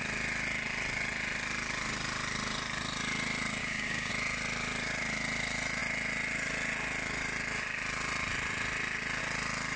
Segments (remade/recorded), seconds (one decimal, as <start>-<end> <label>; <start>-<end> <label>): 0.0-3.6 recorded; 3.6-4.1 remade; 4.1-9.8 recorded